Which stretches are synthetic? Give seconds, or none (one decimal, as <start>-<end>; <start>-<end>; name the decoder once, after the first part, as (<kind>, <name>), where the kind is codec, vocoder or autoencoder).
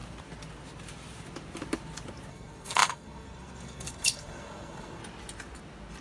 2.3-5.0 (codec, SNAC)